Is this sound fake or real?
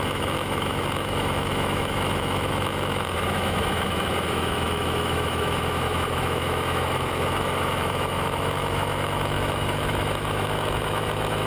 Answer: fake